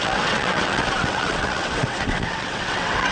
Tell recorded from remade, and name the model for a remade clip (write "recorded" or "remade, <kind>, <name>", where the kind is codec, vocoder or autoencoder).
remade, vocoder, WaveNeXt